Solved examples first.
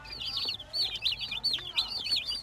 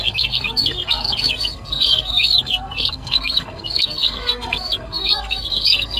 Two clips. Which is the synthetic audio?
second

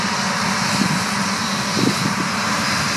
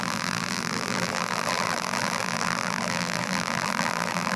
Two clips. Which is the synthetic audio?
second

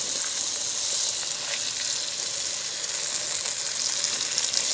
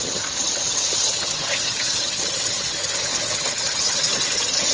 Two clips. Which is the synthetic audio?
second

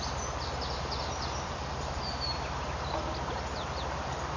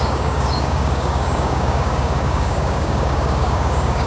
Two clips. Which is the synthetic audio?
second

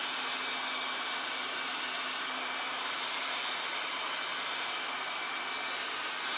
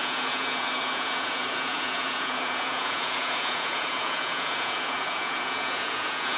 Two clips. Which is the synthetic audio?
second